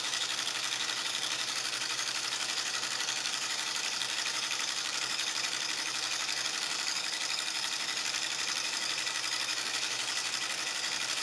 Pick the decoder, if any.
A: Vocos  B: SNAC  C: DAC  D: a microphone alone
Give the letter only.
C